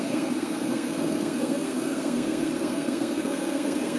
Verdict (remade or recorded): remade